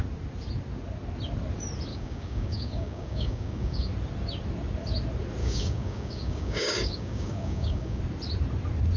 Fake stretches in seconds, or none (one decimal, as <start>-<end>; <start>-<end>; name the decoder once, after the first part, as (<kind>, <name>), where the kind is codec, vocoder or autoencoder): 1.9-3.9 (codec, DAC); 5.4-8.0